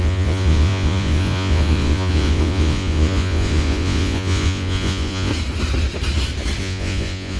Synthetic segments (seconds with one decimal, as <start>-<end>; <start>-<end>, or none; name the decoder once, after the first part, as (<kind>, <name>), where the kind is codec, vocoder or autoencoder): 0.0-5.3 (vocoder, Vocos); 6.6-7.4